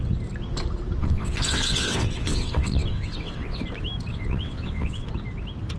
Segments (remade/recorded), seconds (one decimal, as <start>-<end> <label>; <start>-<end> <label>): 0.0-1.0 recorded; 1.0-3.6 remade; 3.6-4.1 recorded; 4.1-5.1 remade; 5.1-5.8 recorded